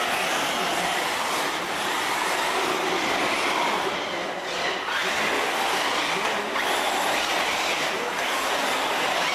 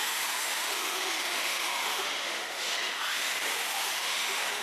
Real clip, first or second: first